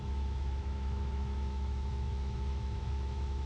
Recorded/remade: remade